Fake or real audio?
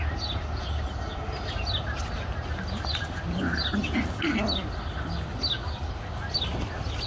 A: real